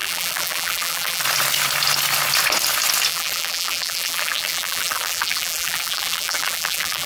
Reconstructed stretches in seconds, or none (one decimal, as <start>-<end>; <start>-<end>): 0.0-1.2; 3.1-7.1